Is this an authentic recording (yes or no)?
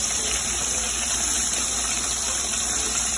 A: no